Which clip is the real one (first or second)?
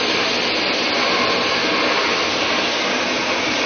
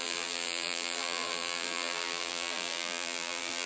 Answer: first